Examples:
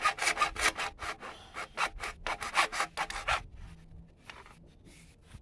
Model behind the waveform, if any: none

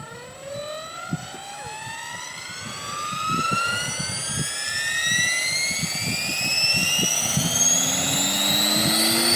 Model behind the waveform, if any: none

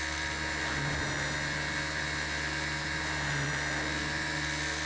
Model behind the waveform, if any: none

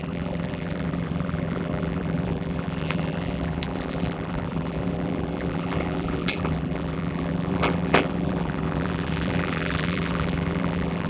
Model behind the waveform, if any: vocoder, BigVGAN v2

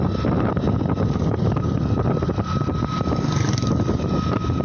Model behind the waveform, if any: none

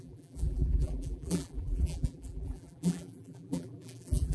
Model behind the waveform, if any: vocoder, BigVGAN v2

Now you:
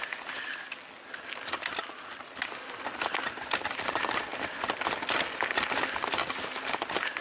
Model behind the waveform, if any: none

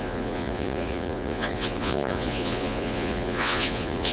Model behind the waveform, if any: vocoder, Vocos